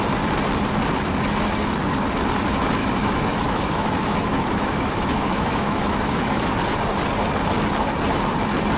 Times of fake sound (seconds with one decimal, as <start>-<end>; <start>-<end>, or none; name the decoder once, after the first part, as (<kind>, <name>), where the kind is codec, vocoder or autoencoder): 2.8-6.5 (autoencoder, DAC-VAE)